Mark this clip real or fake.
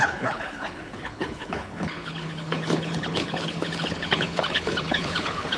fake